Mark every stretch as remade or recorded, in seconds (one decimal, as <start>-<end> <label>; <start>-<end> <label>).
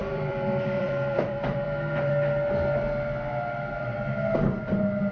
0.0-2.1 remade; 2.1-5.1 recorded